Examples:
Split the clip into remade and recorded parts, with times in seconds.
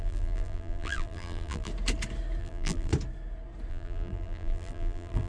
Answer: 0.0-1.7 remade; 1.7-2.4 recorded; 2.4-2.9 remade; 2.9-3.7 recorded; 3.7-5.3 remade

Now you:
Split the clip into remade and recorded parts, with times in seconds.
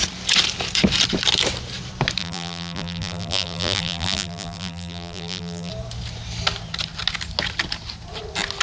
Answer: 0.0-2.2 recorded; 2.2-5.7 remade; 5.7-8.6 recorded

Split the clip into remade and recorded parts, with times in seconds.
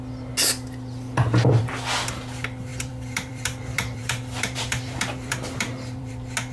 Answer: 0.0-2.7 recorded; 2.7-6.1 remade; 6.1-6.5 recorded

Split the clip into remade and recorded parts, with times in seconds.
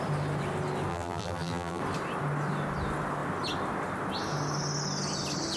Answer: 0.0-0.9 recorded; 0.9-1.8 remade; 1.8-5.6 recorded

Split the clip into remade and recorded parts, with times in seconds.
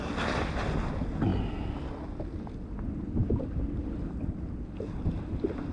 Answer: 0.0-5.7 recorded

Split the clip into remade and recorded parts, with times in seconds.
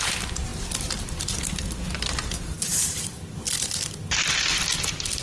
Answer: 0.0-0.5 recorded; 0.5-3.4 remade; 3.4-4.5 recorded; 4.5-5.2 remade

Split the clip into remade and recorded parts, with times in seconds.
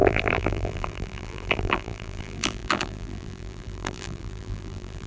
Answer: 0.0-5.1 remade